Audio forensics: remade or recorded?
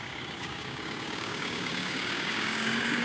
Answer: remade